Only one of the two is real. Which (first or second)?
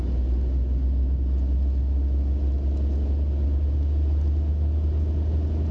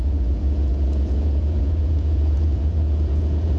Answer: first